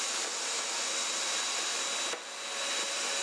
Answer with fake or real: real